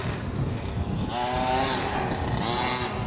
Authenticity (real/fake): real